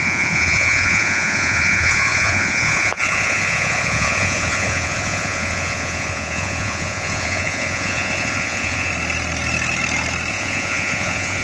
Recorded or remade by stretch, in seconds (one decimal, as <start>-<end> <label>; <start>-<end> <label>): 0.0-8.9 remade; 8.9-10.3 recorded; 10.3-11.4 remade